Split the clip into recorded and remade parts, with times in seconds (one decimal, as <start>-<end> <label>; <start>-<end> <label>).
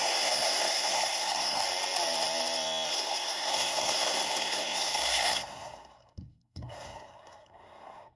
0.0-1.6 remade; 1.6-2.9 recorded; 2.9-8.2 remade